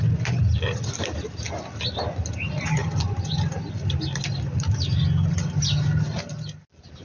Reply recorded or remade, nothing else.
recorded